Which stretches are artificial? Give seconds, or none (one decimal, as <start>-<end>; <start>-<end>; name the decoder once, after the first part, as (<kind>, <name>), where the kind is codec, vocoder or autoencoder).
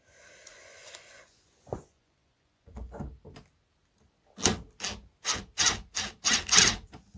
0.5-3.0 (vocoder, Vocos)